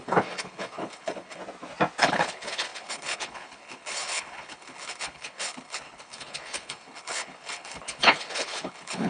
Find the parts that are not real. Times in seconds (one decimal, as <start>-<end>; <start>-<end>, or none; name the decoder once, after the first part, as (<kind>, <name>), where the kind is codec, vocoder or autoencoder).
0.0-1.4 (codec, HILCodec); 2.0-9.1